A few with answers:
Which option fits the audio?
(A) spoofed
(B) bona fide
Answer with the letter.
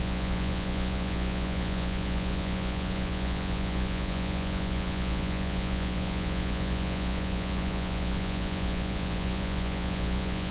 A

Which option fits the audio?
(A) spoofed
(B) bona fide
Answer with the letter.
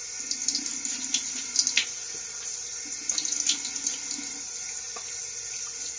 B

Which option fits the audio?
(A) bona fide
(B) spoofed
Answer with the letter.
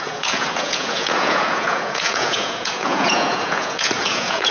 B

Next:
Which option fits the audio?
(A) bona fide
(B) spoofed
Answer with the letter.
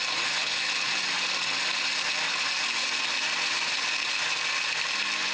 A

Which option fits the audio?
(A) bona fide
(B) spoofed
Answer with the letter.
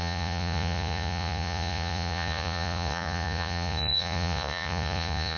B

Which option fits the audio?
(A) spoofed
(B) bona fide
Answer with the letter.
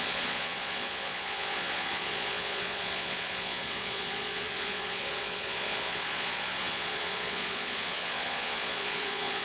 A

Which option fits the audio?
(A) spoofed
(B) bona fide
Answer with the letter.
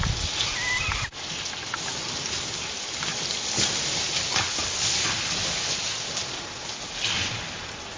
B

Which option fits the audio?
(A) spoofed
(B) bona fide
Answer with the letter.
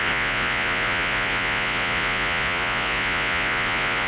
A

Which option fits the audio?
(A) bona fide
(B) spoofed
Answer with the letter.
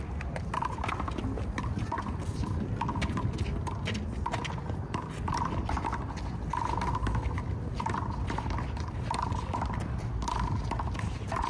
A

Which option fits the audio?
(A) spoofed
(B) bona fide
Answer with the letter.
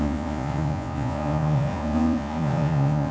A